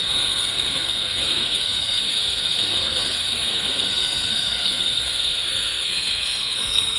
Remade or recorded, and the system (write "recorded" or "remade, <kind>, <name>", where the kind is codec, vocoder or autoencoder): remade, codec, SNAC